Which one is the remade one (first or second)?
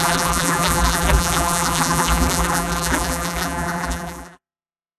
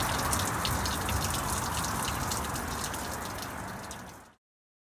first